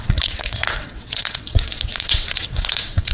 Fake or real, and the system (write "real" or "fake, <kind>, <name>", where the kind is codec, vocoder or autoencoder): fake, vocoder, WaveNeXt